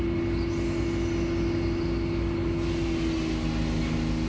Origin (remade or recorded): recorded